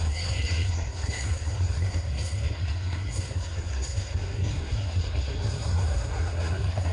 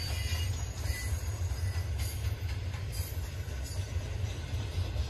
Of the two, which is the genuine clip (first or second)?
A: second